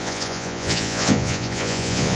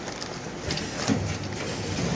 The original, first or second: second